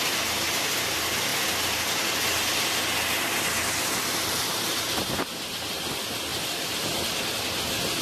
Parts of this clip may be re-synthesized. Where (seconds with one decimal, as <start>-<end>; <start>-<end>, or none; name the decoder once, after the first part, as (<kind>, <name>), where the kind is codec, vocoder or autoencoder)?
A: 1.3-2.6 (vocoder, BigVGAN v2); 6.3-7.3